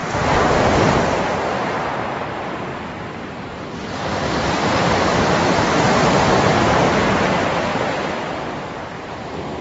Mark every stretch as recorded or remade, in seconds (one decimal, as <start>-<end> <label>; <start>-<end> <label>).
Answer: 0.0-0.6 recorded; 0.6-9.6 remade